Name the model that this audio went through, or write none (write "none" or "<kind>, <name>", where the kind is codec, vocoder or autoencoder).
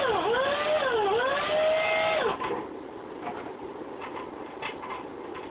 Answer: none